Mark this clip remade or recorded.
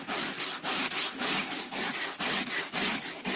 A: recorded